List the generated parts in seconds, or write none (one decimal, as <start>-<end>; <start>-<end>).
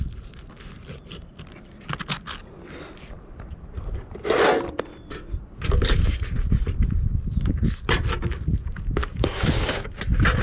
9.0-10.0